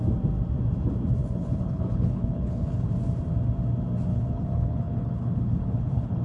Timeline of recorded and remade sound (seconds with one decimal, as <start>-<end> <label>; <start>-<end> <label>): 0.0-1.2 recorded; 1.2-2.9 remade; 2.9-4.1 recorded; 4.1-6.2 remade